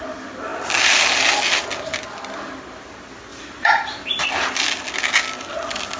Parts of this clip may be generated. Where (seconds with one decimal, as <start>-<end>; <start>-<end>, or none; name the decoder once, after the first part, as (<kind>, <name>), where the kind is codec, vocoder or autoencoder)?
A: 3.3-4.1 (vocoder, BigVGAN v2)

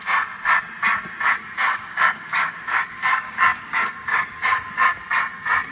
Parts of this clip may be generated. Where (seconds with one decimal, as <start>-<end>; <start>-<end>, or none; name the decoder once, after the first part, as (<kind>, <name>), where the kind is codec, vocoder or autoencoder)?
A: 1.7-5.0 (codec, DAC)

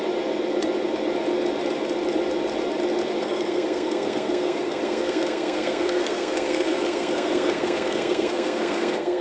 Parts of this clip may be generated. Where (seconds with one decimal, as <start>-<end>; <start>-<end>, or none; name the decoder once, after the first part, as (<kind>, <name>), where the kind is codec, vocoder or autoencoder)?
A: 3.2-9.2 (codec, SNAC)

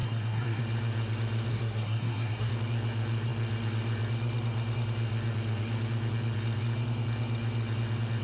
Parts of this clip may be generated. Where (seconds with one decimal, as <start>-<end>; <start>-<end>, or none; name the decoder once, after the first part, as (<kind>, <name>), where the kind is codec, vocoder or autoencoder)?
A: 0.0-0.6 (codec, SNAC); 1.5-2.5

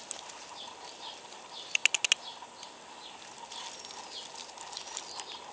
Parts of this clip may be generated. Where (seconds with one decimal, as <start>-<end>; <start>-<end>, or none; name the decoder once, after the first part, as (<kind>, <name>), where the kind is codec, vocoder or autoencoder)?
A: none